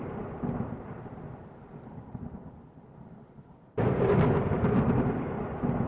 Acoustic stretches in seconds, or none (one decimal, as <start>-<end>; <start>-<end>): 0.0-5.9